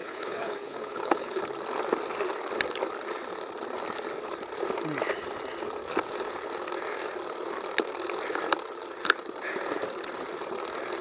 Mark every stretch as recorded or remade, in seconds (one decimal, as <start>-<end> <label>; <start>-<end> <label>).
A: 0.0-1.4 remade; 1.4-11.0 recorded